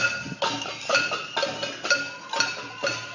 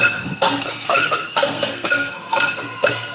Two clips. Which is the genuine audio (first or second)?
first